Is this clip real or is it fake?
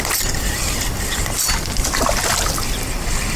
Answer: real